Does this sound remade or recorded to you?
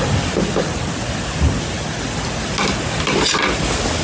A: recorded